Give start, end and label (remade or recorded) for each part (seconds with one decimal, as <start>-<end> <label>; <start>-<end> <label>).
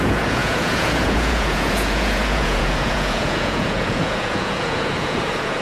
0.0-5.6 remade